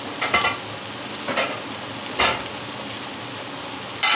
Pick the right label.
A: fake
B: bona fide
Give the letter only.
B